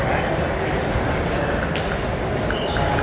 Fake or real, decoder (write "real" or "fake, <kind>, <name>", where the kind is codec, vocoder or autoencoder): real